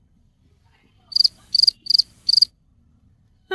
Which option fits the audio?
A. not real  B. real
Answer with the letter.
A